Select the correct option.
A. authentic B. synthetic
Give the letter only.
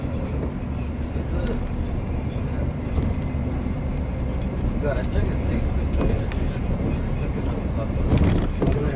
A